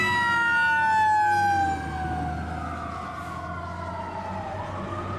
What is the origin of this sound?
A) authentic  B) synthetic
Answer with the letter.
A